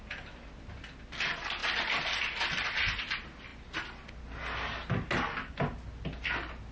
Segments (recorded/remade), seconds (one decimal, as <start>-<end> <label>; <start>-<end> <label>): 0.0-6.7 recorded